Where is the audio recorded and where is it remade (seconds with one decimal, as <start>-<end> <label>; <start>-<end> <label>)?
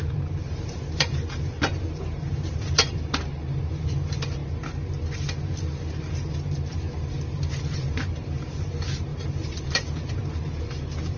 0.0-4.4 remade; 4.4-7.6 recorded; 7.6-11.2 remade